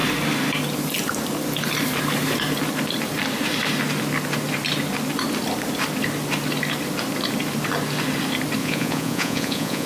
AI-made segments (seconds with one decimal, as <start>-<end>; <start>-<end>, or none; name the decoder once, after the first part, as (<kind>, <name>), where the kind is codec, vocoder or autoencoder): 8.6-9.9 (vocoder, Vocos)